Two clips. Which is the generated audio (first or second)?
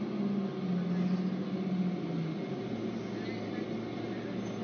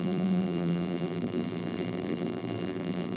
second